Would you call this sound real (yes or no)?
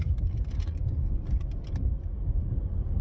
yes